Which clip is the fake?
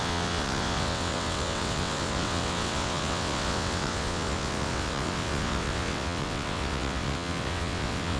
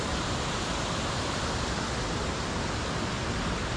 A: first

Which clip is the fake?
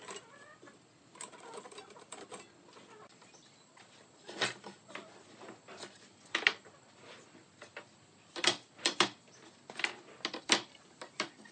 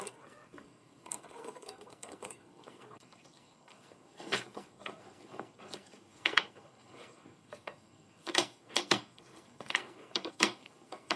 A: second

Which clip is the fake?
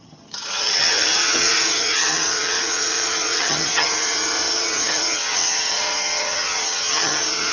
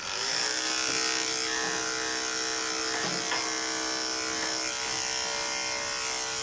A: first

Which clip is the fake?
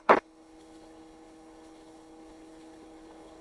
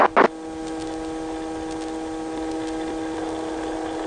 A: first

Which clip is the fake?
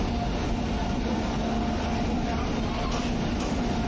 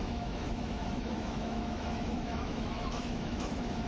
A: second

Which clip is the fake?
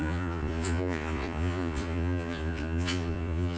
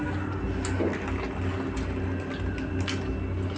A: first